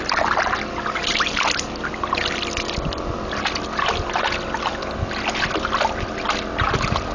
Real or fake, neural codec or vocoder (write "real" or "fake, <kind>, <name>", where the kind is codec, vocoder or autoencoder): real